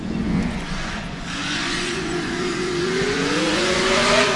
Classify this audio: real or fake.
fake